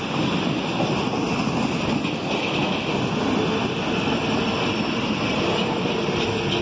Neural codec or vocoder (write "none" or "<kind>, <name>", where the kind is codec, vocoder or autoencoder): none